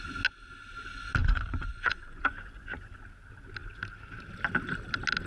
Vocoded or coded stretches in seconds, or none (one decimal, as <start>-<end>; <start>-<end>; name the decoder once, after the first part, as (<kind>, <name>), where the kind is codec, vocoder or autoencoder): 1.2-3.0 (vocoder, Vocos)